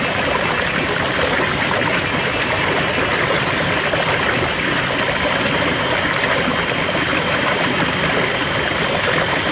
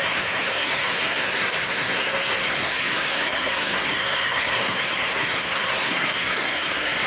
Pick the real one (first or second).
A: first